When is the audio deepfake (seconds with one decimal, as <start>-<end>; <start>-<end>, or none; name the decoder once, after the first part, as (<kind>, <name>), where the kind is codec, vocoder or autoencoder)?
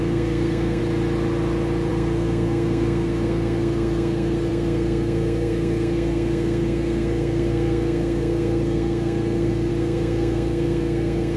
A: 0.0-0.8 (codec, SNAC); 1.9-11.4